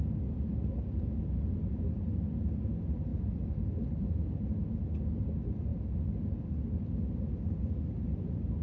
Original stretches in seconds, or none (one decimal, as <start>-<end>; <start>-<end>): 0.0-8.6